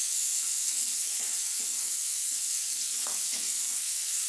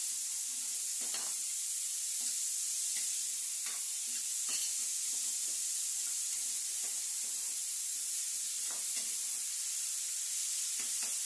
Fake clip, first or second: first